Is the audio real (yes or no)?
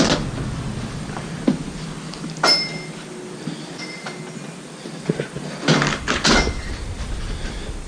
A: yes